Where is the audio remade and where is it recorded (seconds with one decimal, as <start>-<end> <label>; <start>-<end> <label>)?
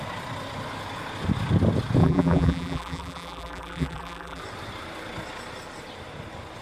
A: 0.0-2.0 recorded; 2.0-4.4 remade; 4.4-6.6 recorded